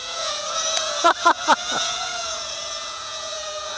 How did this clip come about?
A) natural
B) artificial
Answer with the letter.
B